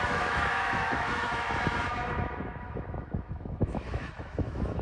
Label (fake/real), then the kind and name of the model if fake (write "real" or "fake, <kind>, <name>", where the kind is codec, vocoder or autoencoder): fake, autoencoder, DAC-VAE